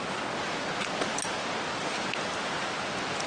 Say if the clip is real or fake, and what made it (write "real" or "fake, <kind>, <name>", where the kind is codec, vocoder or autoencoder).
real